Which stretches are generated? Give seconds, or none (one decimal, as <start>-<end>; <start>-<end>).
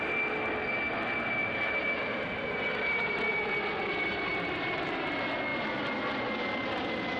1.4-3.3; 4.3-5.1